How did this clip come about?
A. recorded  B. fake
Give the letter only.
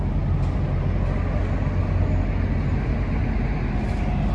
A